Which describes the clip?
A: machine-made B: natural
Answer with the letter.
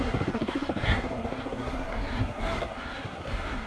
A